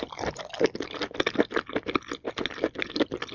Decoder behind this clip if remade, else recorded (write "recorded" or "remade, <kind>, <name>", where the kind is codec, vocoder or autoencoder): recorded